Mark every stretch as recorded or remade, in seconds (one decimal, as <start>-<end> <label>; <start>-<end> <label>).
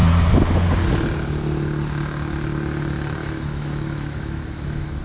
0.0-3.2 recorded; 3.2-5.0 remade